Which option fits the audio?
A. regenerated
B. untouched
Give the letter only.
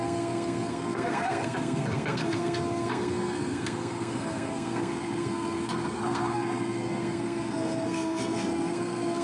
A